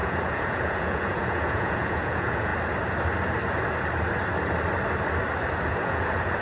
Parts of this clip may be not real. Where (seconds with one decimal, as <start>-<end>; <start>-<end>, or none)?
0.0-2.5; 5.7-6.4